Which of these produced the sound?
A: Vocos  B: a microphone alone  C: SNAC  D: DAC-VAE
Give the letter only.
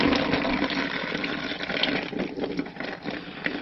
B